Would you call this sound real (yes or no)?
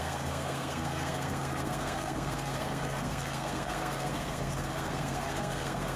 no